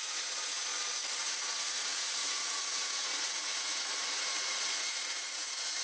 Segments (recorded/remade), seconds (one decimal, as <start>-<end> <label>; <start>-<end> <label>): 0.0-0.7 remade; 0.7-1.2 recorded; 1.2-5.8 remade